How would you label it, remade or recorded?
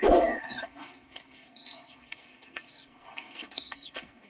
remade